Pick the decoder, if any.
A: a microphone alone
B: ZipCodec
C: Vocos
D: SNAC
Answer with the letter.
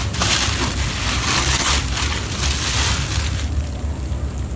A